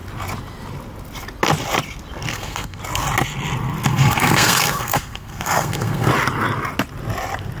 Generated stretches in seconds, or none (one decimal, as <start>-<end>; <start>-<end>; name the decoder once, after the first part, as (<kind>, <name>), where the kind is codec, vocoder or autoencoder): 2.3-2.8 (codec, SNAC); 3.9-6.1